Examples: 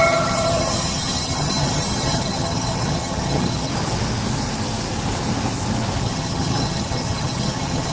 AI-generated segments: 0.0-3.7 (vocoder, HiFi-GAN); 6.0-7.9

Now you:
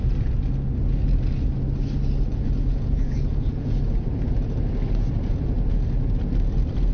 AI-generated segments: 2.3-3.8 (vocoder, Vocos)

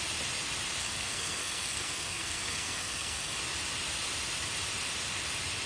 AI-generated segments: 0.8-3.4 (codec, SNAC)